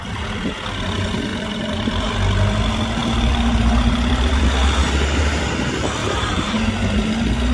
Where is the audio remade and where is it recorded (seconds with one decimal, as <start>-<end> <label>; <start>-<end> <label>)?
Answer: 0.0-1.3 recorded; 1.3-2.1 remade; 2.1-3.0 recorded; 3.0-4.4 remade; 4.4-6.0 recorded; 6.0-6.6 remade; 6.6-7.5 recorded